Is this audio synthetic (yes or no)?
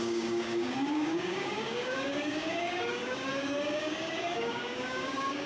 yes